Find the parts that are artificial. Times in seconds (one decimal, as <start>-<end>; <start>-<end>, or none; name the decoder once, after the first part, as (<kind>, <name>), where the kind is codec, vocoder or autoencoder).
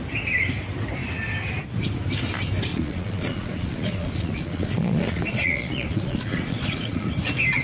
2.7-7.1 (vocoder, Vocos)